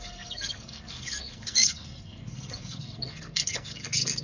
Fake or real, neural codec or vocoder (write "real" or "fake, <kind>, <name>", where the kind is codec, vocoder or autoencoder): fake, codec, SNAC